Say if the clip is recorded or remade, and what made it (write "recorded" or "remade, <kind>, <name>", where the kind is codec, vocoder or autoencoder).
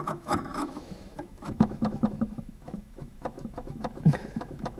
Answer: remade, autoencoder, DAC-VAE